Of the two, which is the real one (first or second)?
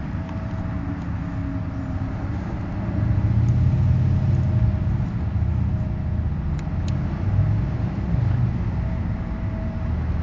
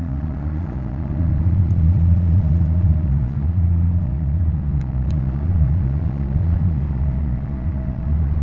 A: first